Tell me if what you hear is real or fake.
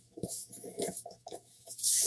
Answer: fake